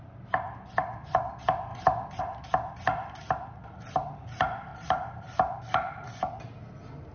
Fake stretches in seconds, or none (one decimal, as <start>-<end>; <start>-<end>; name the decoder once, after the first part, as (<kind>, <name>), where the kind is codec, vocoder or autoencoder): 4.7-5.9 (vocoder, BigVGAN v2)